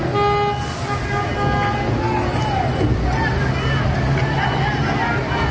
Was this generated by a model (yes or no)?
no